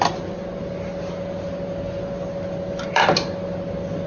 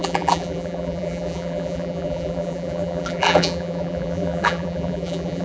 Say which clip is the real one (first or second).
first